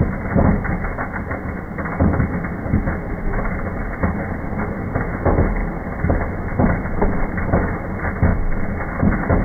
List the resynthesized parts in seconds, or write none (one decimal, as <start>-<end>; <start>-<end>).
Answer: 5.6-7.5